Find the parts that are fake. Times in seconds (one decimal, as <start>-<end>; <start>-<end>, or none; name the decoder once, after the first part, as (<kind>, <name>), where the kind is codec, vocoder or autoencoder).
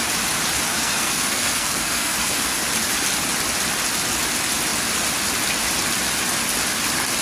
0.7-2.6 (codec, SNAC)